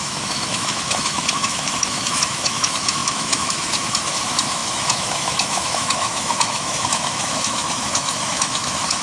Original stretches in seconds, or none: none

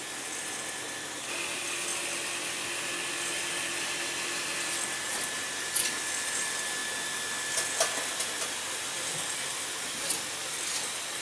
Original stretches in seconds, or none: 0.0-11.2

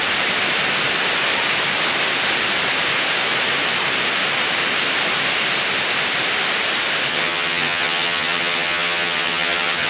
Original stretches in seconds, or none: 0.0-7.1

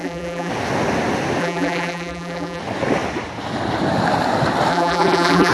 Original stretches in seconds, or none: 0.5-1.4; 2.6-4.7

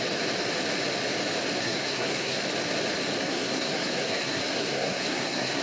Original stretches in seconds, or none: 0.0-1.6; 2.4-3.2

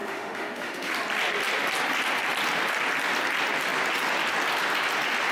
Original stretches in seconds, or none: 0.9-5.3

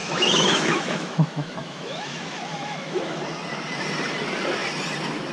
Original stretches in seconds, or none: 3.2-5.3

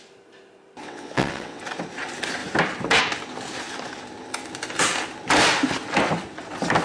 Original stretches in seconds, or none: 0.0-0.8; 1.6-6.8